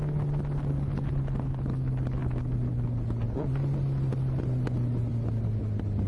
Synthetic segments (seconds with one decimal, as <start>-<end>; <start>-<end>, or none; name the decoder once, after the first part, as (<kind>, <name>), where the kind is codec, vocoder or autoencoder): none